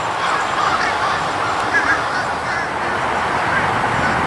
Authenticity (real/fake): real